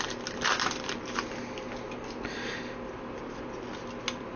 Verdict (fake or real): real